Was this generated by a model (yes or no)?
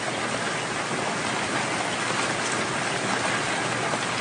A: no